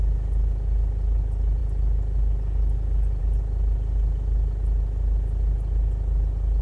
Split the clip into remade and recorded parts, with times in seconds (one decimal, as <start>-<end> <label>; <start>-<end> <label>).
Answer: 0.0-6.6 recorded